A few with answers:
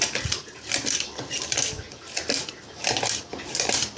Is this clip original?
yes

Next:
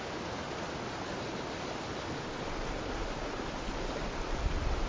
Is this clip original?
yes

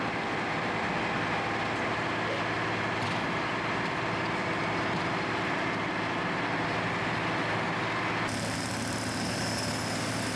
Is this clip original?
yes